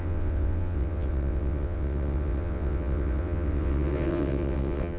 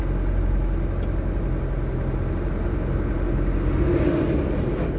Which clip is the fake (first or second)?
first